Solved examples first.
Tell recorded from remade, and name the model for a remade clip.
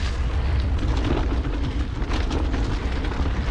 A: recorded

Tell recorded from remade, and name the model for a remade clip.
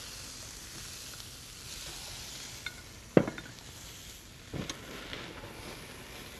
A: recorded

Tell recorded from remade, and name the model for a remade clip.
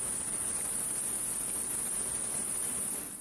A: recorded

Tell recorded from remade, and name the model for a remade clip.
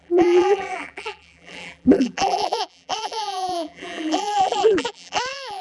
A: remade, vocoder, BigVGAN v2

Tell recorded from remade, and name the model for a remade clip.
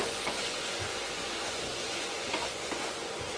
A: remade, vocoder, Vocos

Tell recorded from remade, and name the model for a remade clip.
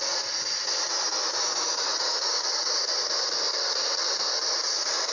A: recorded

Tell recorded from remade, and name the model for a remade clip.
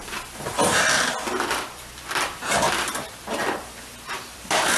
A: remade, vocoder, BigVGAN v2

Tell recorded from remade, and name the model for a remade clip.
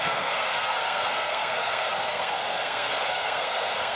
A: remade, codec, SNAC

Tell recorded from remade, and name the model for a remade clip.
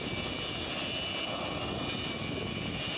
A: recorded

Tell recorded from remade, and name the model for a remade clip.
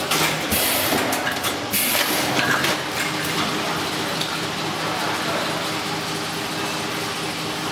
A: recorded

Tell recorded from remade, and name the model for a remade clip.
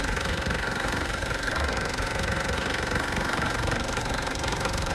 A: remade, codec, SNAC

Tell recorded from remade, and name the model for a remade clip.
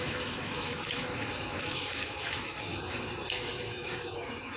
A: remade, autoencoder, DAC-VAE